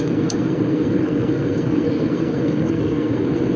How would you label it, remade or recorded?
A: remade